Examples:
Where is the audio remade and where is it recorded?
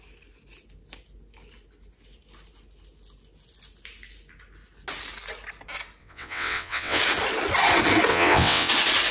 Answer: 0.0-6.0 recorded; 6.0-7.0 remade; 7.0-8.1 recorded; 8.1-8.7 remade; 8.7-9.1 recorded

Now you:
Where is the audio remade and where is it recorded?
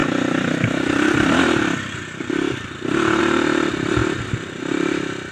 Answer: 0.0-4.0 remade; 4.0-4.6 recorded; 4.6-5.3 remade